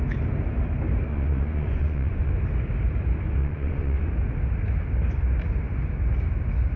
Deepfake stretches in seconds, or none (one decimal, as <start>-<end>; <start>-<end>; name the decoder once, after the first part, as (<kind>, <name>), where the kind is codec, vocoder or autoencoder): 1.1-2.3 (vocoder, Vocos); 3.4-4.1